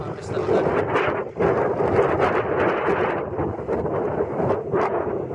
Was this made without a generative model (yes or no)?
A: yes